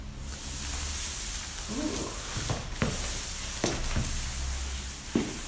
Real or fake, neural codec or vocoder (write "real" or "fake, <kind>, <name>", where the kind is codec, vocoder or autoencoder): real